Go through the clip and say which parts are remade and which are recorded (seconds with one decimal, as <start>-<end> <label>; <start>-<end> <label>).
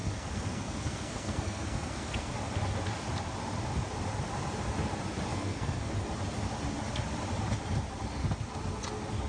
0.0-2.3 remade; 2.3-5.3 recorded; 5.3-5.9 remade; 5.9-9.3 recorded